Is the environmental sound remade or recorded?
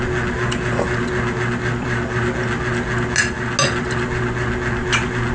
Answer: recorded